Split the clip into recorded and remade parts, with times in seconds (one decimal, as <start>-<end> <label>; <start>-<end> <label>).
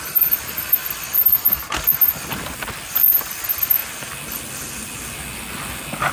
0.0-6.1 recorded